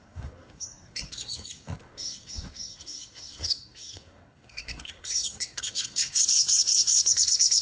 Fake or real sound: fake